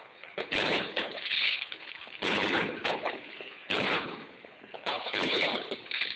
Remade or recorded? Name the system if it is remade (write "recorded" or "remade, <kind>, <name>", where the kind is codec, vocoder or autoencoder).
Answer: remade, codec, HILCodec